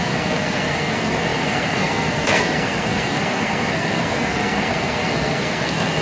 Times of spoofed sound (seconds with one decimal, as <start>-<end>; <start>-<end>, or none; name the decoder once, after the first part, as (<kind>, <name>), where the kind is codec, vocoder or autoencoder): 0.0-6.0 (codec, SNAC)